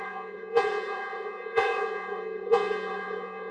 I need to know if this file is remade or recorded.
remade